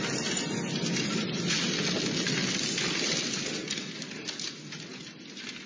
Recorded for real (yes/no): yes